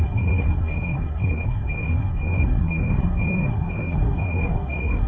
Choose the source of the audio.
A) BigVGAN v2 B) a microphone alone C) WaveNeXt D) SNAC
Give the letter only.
D